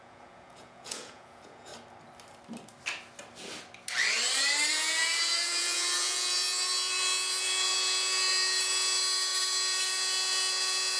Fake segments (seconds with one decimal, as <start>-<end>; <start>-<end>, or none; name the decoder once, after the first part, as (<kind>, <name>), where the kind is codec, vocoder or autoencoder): 0.0-1.7 (vocoder, Vocos); 4.7-11.0